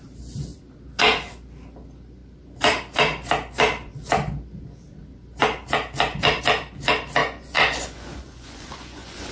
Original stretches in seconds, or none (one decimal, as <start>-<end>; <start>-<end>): 0.0-7.2